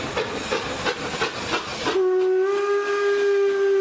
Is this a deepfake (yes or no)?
no